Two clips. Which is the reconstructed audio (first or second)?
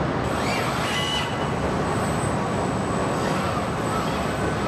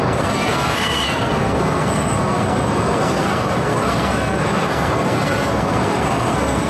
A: second